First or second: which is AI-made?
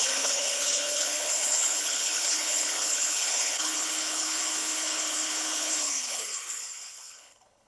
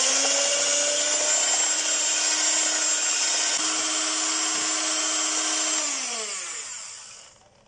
first